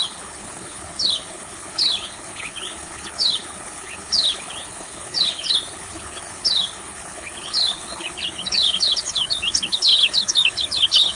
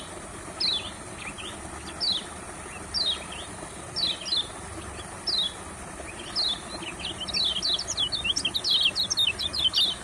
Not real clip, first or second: first